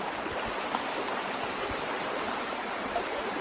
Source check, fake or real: fake